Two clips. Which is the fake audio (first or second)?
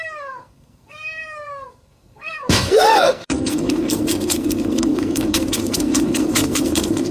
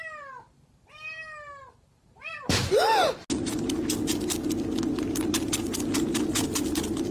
first